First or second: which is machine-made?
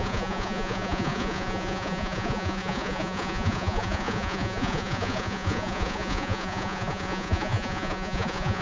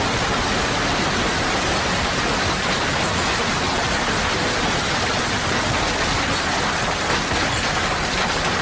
first